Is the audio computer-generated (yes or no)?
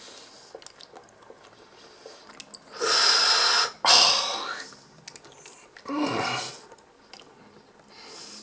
no